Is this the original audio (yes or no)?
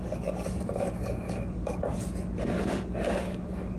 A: no